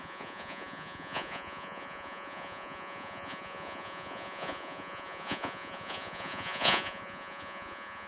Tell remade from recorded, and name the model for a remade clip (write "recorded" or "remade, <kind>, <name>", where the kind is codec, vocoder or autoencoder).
remade, vocoder, Vocos